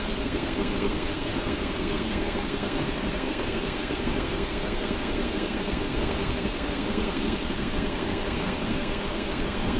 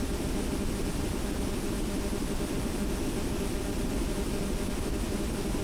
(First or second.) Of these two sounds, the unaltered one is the second